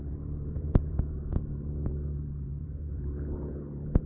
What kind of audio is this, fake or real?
fake